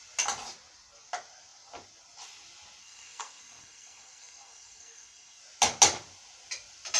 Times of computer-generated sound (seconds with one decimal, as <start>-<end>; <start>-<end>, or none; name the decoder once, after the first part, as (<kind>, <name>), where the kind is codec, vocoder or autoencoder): 2.8-5.4 (codec, SNAC)